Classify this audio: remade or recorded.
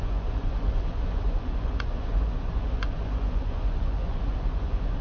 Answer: remade